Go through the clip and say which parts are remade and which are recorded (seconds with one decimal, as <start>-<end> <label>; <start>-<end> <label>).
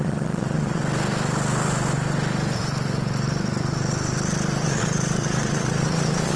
0.0-0.8 remade; 0.8-4.6 recorded; 4.6-6.4 remade